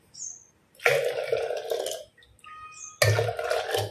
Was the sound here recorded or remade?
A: recorded